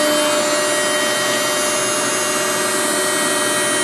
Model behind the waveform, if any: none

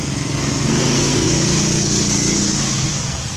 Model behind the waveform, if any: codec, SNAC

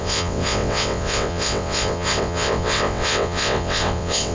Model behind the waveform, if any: vocoder, WaveNeXt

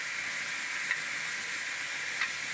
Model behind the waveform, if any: none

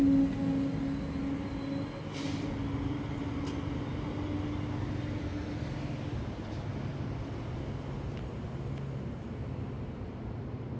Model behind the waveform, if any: none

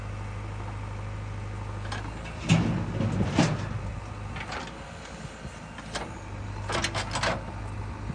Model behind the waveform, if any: none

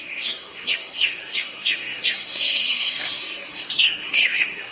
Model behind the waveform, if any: codec, SNAC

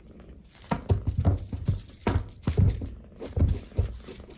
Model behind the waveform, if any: none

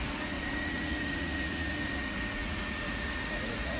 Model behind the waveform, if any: vocoder, Vocos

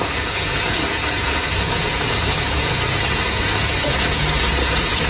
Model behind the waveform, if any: vocoder, Vocos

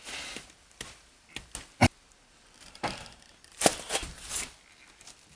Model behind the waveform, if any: none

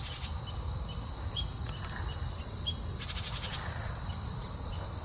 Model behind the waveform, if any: none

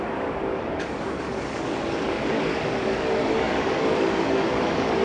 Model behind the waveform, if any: codec, DAC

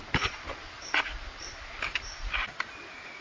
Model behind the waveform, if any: none